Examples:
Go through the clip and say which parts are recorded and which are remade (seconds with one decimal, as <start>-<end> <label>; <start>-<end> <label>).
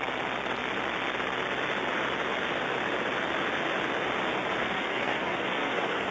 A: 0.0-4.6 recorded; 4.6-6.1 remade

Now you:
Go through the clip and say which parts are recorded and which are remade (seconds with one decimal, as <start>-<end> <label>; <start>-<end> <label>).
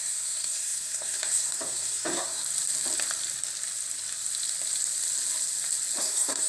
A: 0.0-2.4 remade; 2.4-6.0 recorded; 6.0-6.5 remade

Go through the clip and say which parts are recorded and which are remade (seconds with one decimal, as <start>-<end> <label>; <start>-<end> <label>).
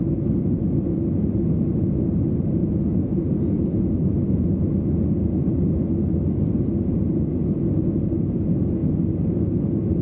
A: 0.0-10.0 recorded